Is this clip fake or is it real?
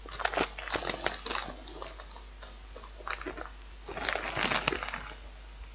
real